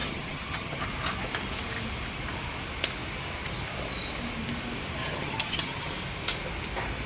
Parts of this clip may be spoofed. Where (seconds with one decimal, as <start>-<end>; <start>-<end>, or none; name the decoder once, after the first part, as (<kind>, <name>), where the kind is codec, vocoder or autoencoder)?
0.0-0.8 (vocoder, HiFi-GAN); 5.0-5.9